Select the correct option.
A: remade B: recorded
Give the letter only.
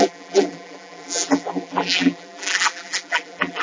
A